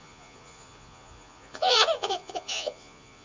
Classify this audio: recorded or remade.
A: remade